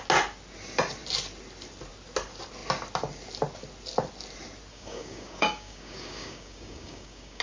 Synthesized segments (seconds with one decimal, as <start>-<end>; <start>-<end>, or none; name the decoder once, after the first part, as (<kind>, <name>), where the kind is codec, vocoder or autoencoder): 4.7-7.4 (codec, DAC)